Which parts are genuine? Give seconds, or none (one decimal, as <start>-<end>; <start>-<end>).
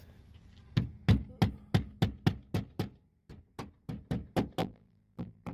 0.0-4.6